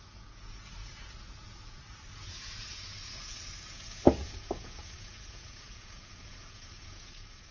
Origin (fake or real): fake